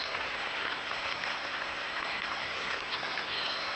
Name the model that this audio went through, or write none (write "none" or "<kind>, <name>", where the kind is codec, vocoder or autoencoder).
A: codec, SNAC